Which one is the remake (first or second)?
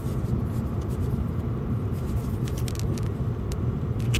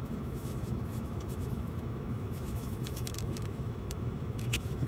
second